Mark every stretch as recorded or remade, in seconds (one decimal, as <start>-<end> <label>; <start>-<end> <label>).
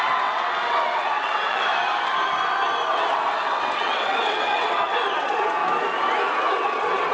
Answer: 0.0-1.7 remade; 1.7-2.9 recorded; 2.9-5.6 remade; 5.6-6.5 recorded; 6.5-7.1 remade